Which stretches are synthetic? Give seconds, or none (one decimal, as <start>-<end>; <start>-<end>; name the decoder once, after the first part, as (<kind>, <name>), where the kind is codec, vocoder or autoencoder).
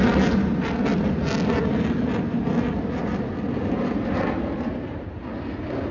none